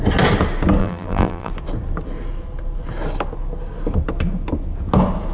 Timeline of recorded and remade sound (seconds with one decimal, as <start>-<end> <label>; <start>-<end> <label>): 0.0-0.8 recorded; 0.8-1.5 remade; 1.5-5.3 recorded